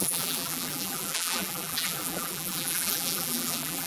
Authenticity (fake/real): fake